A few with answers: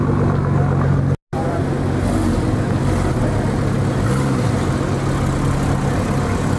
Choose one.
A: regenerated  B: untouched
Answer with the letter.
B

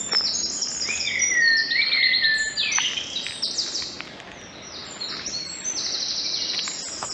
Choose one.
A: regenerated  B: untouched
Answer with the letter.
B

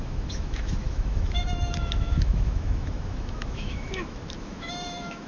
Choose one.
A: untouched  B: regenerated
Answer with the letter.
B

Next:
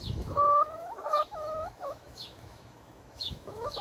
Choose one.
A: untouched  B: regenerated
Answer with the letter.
B